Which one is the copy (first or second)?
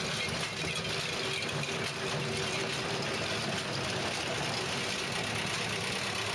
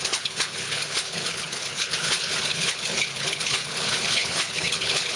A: second